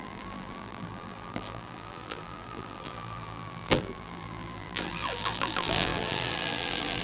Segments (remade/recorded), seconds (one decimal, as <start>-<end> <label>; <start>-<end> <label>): 0.0-7.0 remade